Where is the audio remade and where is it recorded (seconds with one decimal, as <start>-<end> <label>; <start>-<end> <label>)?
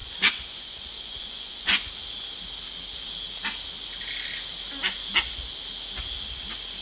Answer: 0.0-1.9 remade; 1.9-6.8 recorded